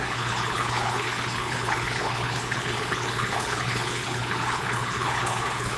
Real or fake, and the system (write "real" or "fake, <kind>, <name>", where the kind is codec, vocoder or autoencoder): fake, codec, HILCodec